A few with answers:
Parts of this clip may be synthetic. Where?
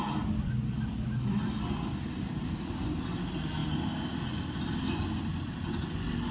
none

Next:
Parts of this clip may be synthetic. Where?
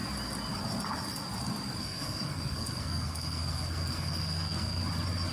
1.8-4.8 (codec, SNAC)